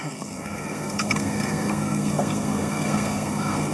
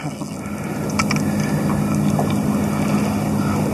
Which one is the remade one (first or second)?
first